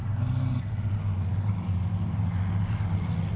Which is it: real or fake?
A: real